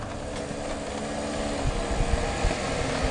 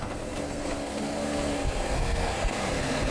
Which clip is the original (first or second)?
first